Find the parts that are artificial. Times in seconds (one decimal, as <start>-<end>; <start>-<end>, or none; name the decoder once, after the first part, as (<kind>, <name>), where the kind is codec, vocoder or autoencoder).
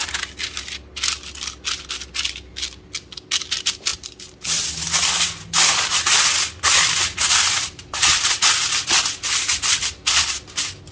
none